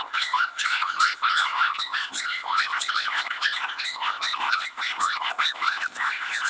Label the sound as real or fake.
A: fake